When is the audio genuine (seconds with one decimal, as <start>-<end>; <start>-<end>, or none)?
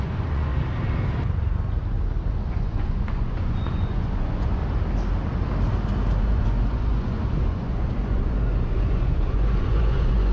0.5-2.3; 4.6-6.2